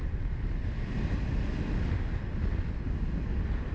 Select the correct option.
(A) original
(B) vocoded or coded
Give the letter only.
A